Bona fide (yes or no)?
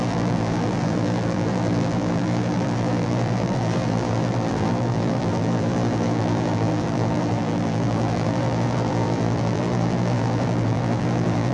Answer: no